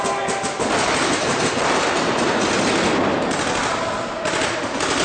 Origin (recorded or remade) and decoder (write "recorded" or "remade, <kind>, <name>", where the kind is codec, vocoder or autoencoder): recorded